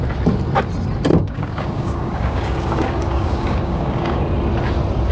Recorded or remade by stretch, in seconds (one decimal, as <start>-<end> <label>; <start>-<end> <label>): 0.0-1.1 recorded; 1.1-4.2 remade; 4.2-5.1 recorded